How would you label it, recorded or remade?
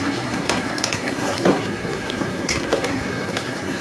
remade